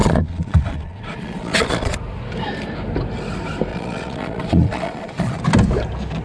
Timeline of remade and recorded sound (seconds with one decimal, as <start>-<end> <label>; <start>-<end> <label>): 0.0-1.9 remade; 1.9-3.7 recorded; 3.7-5.4 remade; 5.4-6.2 recorded